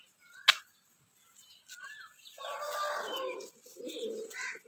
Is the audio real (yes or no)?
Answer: yes